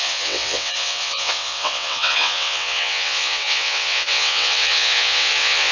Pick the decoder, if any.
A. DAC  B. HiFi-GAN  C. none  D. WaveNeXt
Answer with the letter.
D